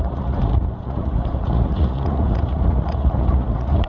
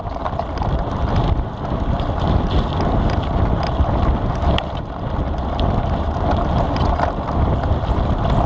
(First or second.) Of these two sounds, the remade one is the first